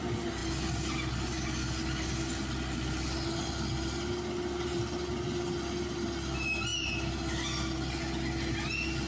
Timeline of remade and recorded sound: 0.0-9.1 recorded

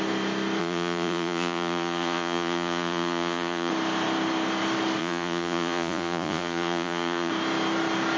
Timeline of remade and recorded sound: 0.0-0.6 recorded; 0.6-3.7 remade; 3.7-5.0 recorded; 5.0-7.3 remade; 7.3-8.2 recorded

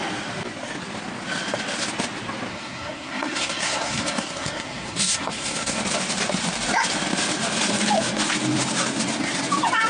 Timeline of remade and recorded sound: 0.0-2.5 recorded; 2.5-5.8 remade; 5.8-9.9 recorded

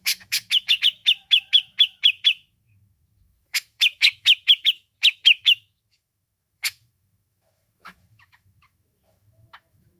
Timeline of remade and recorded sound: 0.0-10.0 remade